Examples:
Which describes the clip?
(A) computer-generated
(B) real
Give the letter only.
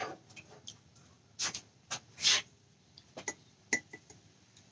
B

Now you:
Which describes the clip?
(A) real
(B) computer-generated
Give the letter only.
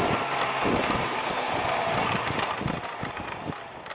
A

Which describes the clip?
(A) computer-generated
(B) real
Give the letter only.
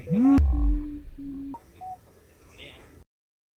A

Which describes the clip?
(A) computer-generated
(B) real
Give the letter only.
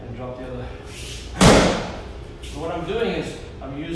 B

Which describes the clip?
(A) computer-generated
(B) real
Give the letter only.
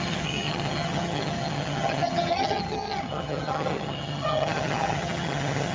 A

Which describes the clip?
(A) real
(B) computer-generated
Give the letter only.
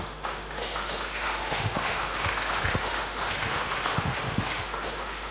B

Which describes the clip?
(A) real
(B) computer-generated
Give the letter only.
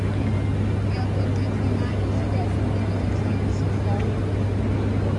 A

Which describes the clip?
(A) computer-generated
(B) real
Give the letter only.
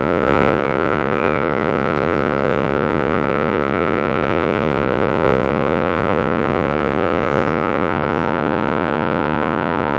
A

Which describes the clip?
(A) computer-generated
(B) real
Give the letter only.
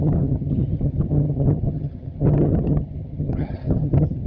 A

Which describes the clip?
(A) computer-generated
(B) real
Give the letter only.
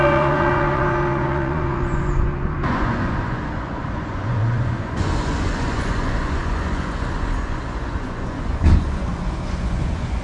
A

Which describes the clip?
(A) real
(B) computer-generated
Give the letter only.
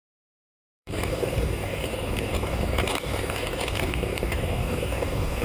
B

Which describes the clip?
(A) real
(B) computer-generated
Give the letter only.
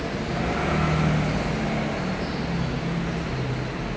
A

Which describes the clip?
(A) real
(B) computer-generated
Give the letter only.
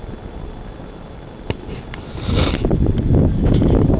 A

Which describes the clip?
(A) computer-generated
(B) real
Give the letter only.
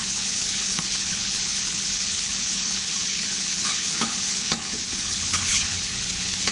A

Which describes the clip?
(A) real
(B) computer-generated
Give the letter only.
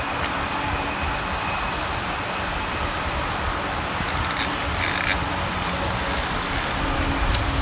A